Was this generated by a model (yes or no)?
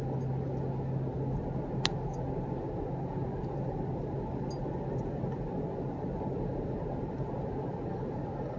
no